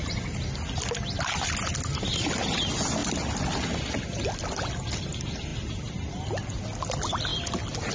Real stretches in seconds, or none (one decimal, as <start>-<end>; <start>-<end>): 0.0-7.9